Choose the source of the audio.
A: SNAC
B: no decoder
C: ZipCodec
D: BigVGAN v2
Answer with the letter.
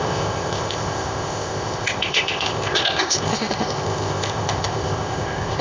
C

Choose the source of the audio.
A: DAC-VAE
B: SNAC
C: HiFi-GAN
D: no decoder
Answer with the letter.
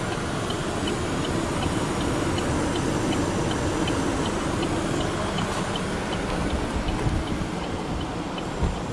D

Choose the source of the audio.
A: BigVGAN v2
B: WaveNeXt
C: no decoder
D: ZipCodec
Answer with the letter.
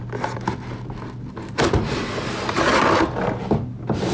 C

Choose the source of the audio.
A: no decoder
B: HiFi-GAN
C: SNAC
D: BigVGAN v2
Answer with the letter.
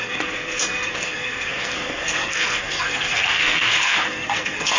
C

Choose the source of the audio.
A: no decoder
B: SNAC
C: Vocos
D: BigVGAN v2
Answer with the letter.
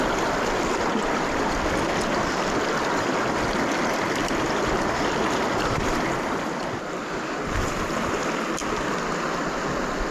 A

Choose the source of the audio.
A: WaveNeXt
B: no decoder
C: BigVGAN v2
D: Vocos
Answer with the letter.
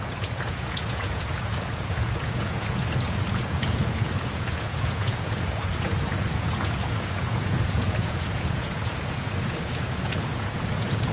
D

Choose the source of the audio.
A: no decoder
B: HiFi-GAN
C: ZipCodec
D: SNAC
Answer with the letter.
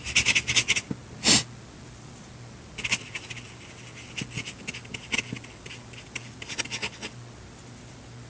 A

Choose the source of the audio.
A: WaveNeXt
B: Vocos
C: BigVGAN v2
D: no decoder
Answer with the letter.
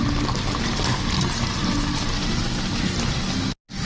D